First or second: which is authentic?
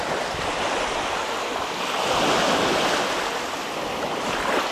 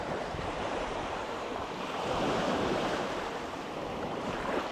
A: first